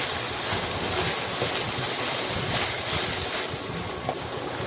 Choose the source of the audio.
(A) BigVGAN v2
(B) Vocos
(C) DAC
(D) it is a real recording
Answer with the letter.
D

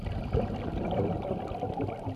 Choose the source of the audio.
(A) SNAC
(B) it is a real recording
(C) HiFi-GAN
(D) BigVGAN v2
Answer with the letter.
B